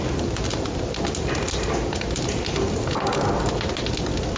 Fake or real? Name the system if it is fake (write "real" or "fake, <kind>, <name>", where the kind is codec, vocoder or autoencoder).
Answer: real